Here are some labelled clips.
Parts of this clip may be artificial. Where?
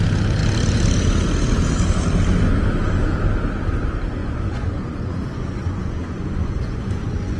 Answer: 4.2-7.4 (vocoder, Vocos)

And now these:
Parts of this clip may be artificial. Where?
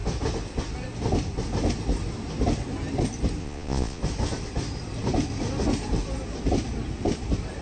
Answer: 3.4-4.0 (vocoder, Vocos)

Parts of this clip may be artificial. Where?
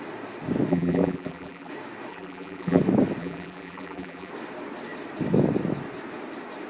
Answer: 0.7-1.7 (vocoder, BigVGAN v2); 2.1-2.8; 3.2-4.3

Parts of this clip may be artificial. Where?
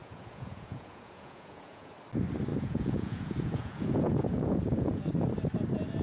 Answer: 0.0-1.9 (vocoder, Vocos); 2.5-5.1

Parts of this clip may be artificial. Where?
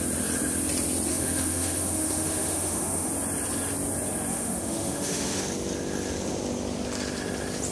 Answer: 1.1-3.1 (autoencoder, DAC-VAE); 4.3-5.4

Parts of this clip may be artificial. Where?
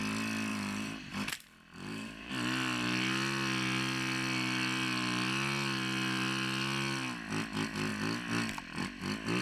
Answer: 0.5-2.3 (vocoder, BigVGAN v2)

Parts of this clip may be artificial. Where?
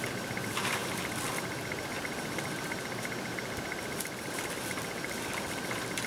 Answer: none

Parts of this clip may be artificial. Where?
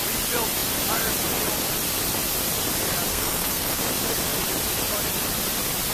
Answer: 3.1-3.8 (codec, SNAC)